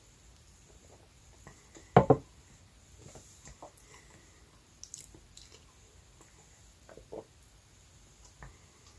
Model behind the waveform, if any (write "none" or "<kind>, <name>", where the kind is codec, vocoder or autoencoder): none